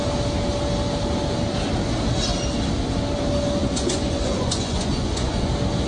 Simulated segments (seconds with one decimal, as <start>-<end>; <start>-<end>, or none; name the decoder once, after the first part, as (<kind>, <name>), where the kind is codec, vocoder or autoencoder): 3.6-5.5 (vocoder, Vocos)